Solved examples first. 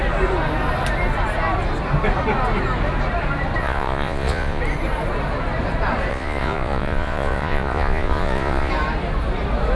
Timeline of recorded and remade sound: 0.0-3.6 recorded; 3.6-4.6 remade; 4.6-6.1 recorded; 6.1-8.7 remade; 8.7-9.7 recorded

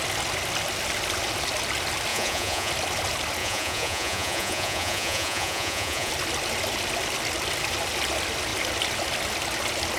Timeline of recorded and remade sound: 0.0-2.1 recorded; 2.1-2.7 remade; 2.7-3.4 recorded; 3.4-6.1 remade; 6.1-10.0 recorded

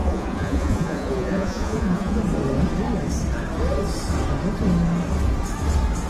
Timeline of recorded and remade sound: 0.0-2.2 remade; 2.2-6.1 recorded

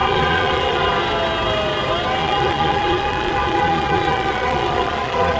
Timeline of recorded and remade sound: 0.0-0.9 remade; 0.9-2.2 recorded; 2.2-5.4 remade

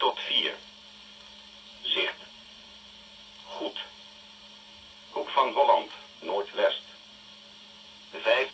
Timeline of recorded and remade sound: 0.0-1.7 recorded; 1.7-2.7 remade; 2.7-8.5 recorded

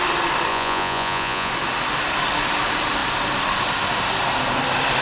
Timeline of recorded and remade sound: 0.0-0.5 recorded; 0.5-1.5 remade; 1.5-5.0 recorded

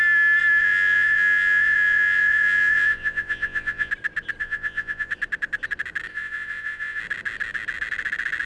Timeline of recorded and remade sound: 0.0-0.6 recorded; 0.6-3.9 remade; 3.9-4.4 recorded; 4.4-5.1 remade; 5.1-6.1 recorded; 6.1-7.0 remade; 7.0-8.4 recorded